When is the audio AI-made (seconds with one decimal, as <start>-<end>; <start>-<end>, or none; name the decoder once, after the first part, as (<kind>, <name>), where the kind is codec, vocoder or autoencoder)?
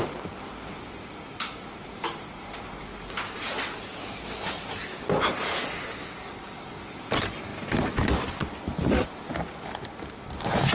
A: 6.0-6.6 (codec, DAC)